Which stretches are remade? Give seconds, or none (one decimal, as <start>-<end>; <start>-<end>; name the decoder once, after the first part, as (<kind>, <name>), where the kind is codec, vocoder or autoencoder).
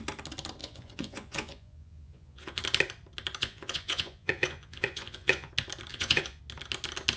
0.6-2.6 (vocoder, Vocos); 3.4-5.5; 5.9-6.4